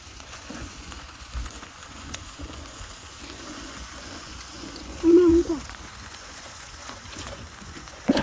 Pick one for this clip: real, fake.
fake